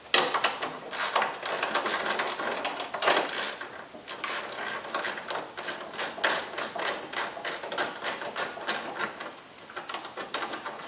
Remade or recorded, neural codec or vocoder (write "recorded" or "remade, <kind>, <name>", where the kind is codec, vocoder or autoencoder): recorded